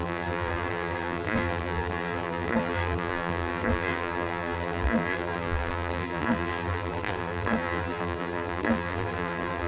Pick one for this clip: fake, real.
fake